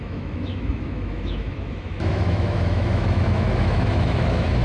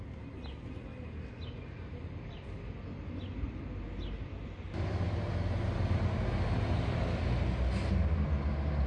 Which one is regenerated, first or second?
first